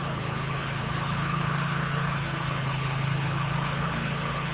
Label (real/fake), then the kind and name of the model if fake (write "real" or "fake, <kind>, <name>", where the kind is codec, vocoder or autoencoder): fake, codec, HILCodec